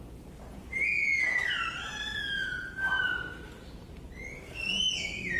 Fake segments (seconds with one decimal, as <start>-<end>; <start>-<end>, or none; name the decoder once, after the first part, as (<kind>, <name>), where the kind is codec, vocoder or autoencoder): 0.7-1.4 (vocoder, Vocos); 2.1-2.7